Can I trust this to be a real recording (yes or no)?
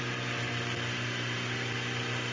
yes